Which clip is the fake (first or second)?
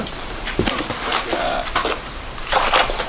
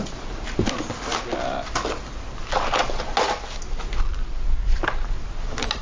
first